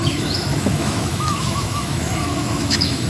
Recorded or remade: remade